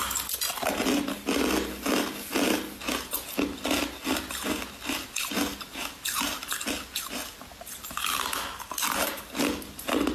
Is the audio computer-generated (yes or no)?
no